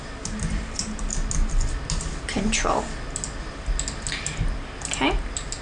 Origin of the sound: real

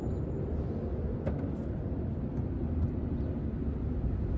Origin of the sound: real